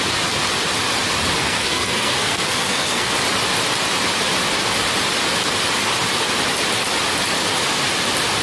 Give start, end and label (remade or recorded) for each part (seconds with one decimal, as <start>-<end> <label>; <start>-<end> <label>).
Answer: 0.0-1.4 recorded; 1.4-3.1 remade; 3.1-8.4 recorded